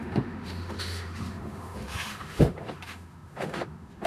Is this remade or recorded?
remade